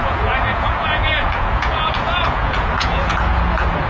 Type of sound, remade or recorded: remade